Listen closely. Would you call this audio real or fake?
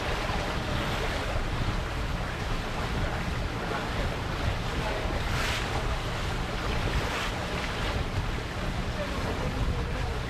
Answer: real